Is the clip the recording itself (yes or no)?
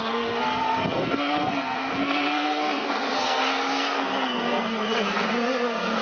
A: no